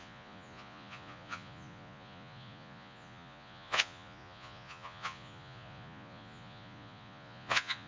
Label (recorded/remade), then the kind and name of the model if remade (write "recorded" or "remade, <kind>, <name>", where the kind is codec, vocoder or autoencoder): remade, vocoder, Vocos